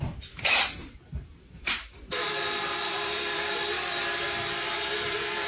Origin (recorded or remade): remade